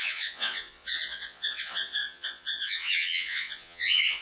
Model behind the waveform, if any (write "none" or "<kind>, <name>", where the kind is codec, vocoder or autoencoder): vocoder, Vocos